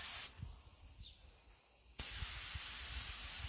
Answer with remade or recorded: recorded